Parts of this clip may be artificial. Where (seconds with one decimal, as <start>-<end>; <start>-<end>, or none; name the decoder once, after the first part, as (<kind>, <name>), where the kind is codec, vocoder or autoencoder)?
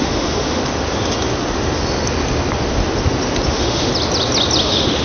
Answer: 0.0-0.6 (autoencoder, DAC-VAE); 3.5-3.9; 4.6-5.0